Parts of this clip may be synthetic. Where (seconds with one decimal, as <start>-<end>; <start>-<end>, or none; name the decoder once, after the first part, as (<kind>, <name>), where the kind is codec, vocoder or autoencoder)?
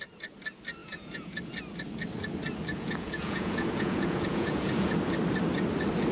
0.8-1.4 (vocoder, Vocos); 2.7-4.9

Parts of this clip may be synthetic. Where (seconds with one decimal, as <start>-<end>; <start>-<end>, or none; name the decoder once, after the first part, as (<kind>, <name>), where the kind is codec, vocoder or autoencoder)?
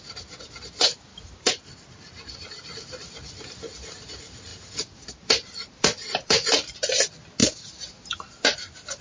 1.1-1.6 (vocoder, BigVGAN v2); 4.5-6.7; 7.4-8.2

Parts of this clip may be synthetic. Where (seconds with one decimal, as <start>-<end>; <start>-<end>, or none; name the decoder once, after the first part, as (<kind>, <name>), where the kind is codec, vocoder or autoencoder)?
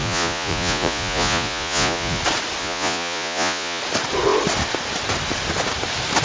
0.0-2.2 (vocoder, Vocos); 2.6-3.8